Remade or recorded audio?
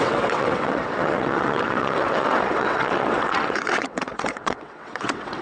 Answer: remade